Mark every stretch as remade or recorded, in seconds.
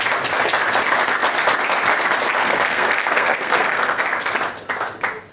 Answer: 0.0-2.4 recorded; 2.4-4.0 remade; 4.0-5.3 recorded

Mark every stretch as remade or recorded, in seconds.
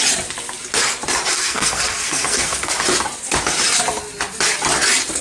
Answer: 0.0-1.3 recorded; 1.3-2.7 remade; 2.7-5.2 recorded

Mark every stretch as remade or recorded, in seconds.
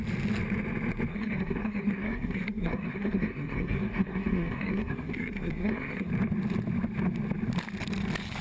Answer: 0.0-1.1 recorded; 1.1-6.1 remade; 6.1-8.4 recorded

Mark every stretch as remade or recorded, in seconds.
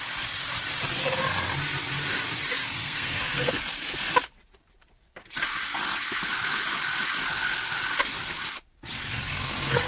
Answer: 0.0-2.6 recorded; 2.6-3.5 remade; 3.5-9.9 recorded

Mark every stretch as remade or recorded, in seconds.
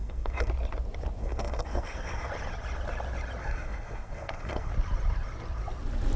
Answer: 0.0-0.5 remade; 0.5-1.2 recorded; 1.2-2.3 remade; 2.3-3.4 recorded; 3.4-4.7 remade; 4.7-6.2 recorded